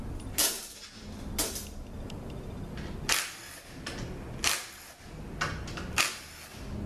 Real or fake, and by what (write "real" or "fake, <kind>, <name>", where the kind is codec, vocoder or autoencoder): real